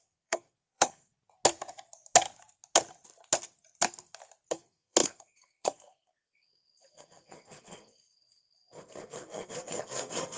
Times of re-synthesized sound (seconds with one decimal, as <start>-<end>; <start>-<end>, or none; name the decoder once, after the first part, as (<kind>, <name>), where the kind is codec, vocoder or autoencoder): 0.0-1.1 (codec, SNAC); 4.5-10.4